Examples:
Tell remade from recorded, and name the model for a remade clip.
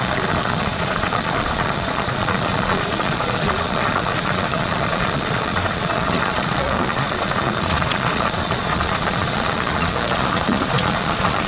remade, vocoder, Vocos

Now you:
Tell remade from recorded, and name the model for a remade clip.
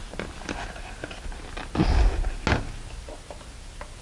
recorded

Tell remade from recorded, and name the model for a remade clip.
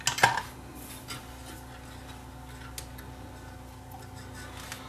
recorded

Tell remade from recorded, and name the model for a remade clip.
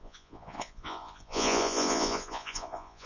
remade, vocoder, Vocos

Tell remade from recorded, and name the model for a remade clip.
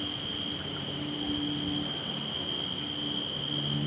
recorded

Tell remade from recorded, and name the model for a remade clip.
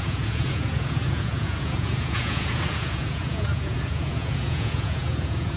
remade, vocoder, Vocos